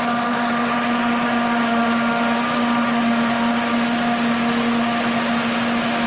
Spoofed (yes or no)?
no